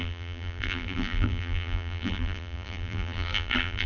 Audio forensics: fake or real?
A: fake